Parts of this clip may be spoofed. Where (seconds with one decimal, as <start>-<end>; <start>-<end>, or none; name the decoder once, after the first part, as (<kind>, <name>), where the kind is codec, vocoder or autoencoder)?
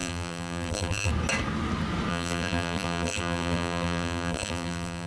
0.0-1.1 (vocoder, BigVGAN v2); 2.1-5.1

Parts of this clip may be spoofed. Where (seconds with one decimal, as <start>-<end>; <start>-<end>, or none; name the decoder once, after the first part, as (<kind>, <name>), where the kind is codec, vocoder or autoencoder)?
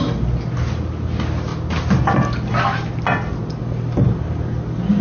none